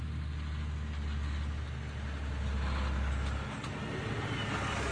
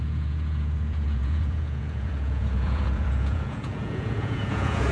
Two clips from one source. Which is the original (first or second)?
first